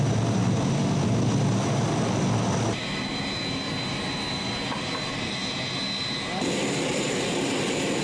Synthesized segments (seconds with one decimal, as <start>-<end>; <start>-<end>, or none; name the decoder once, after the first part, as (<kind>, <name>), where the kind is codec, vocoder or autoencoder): none